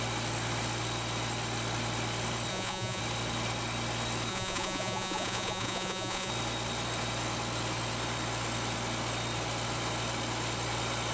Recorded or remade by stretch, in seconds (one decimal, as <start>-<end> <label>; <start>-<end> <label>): 0.0-2.5 recorded; 2.5-3.0 remade; 3.0-4.3 recorded; 4.3-6.3 remade; 6.3-11.1 recorded